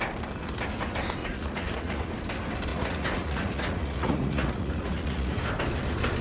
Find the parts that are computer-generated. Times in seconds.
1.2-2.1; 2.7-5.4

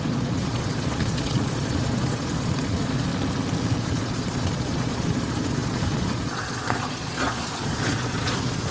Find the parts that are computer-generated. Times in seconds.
0.0-3.1; 3.8-8.7

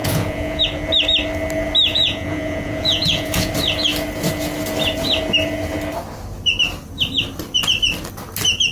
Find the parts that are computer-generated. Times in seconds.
0.0-0.6; 1.9-3.5

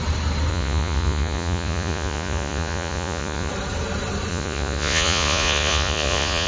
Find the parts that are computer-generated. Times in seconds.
0.5-3.5; 4.3-6.5

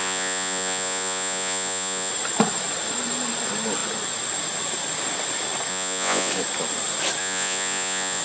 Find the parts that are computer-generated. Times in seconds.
0.0-2.1; 5.7-6.3; 7.2-8.2

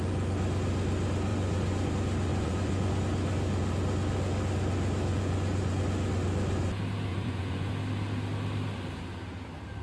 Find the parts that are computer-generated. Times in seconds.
1.3-1.9; 2.3-3.0; 5.1-5.8; 7.1-7.7

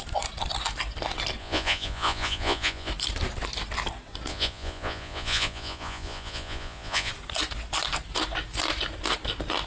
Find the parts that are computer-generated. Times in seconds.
1.4-2.9; 4.3-7.1

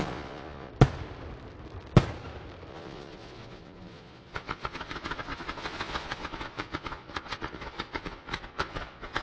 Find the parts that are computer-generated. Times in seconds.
0.0-0.7; 2.7-9.2